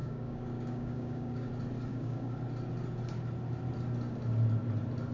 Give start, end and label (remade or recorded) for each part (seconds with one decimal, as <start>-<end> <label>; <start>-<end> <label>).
0.0-1.5 remade; 1.5-1.9 recorded; 1.9-2.4 remade; 2.4-5.1 recorded